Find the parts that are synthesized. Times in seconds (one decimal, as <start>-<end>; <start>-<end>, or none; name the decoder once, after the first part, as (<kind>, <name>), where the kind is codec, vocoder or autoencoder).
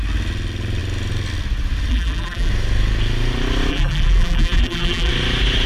1.9-2.5 (vocoder, BigVGAN v2); 3.7-5.1